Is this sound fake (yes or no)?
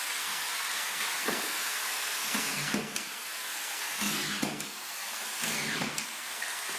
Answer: yes